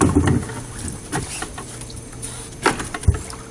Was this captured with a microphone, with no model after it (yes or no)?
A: yes